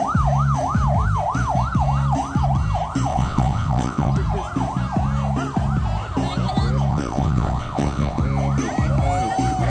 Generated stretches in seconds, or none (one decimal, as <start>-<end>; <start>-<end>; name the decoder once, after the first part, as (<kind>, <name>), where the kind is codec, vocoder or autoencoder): 3.1-4.1 (vocoder, WaveNeXt); 6.9-8.2